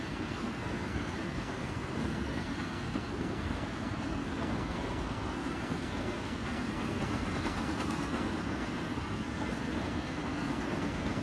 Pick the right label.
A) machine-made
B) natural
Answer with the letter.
A